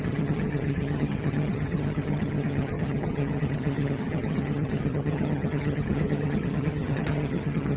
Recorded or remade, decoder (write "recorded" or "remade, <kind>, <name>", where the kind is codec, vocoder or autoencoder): remade, vocoder, HiFi-GAN